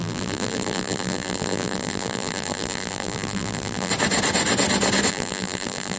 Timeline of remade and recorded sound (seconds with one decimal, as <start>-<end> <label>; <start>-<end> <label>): 0.0-3.9 remade; 3.9-5.1 recorded; 5.1-6.0 remade